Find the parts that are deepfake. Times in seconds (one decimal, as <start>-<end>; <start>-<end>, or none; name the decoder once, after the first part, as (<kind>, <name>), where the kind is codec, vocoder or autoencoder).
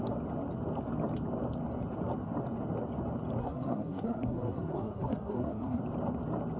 3.4-5.8 (codec, SNAC)